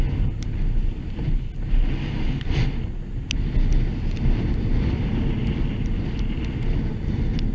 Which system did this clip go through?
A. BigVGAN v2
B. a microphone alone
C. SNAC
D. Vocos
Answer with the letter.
B